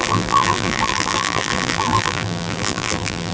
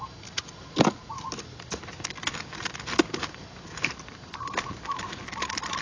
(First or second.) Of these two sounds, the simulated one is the first